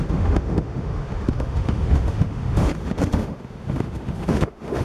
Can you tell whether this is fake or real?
fake